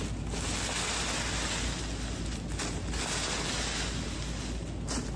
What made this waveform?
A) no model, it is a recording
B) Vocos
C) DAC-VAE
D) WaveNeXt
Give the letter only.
A